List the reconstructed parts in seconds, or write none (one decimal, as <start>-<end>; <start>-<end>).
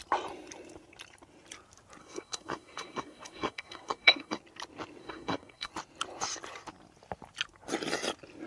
2.0-4.4; 5.0-5.7